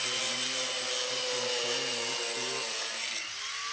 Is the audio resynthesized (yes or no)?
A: no